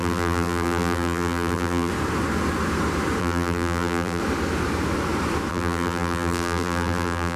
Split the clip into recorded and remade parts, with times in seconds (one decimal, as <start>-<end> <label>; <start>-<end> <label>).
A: 0.0-1.9 remade; 1.9-3.2 recorded; 3.2-4.2 remade; 4.2-5.5 recorded; 5.5-7.4 remade